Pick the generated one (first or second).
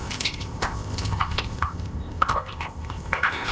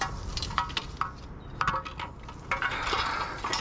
first